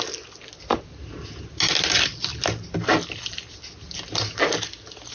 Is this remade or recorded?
recorded